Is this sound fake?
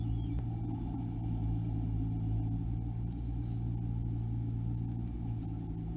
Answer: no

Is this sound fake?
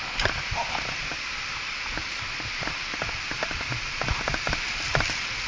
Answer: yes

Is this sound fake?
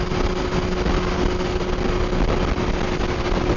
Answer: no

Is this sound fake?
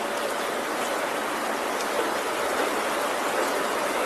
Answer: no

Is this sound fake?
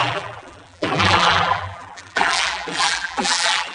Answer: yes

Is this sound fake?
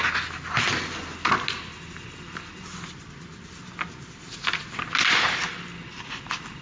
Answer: no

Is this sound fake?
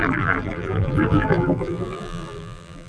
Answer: yes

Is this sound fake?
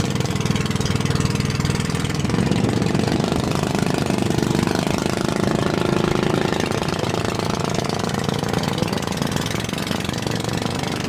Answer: no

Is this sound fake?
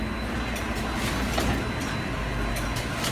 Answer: no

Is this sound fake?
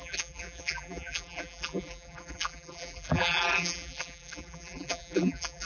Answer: yes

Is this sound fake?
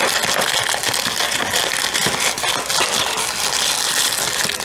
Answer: no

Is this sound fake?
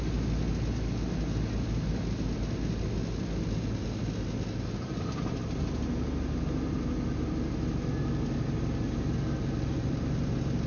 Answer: no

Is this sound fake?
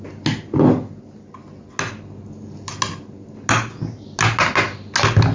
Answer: no